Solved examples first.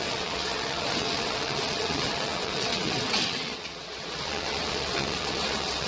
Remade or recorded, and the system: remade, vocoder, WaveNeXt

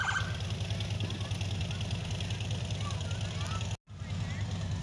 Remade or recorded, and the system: recorded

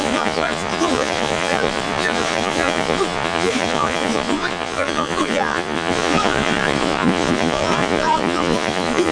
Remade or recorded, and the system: remade, vocoder, Vocos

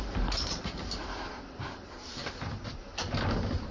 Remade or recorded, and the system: recorded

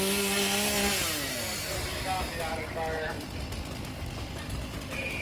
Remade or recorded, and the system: recorded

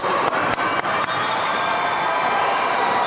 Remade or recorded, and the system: recorded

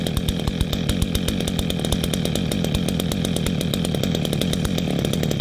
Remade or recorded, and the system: recorded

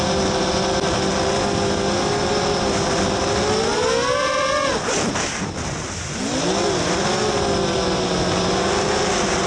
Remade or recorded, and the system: recorded